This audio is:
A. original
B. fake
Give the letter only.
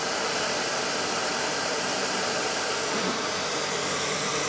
B